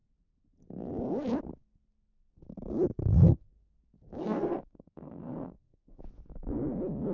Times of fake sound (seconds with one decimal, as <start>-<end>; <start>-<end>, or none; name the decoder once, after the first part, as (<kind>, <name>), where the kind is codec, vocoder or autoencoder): 3.0-3.7 (codec, SNAC); 4.2-6.0